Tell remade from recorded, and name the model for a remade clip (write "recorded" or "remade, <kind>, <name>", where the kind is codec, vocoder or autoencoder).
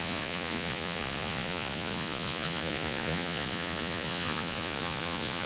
remade, vocoder, Vocos